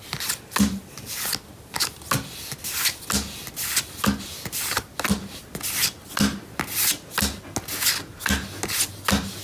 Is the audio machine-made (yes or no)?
no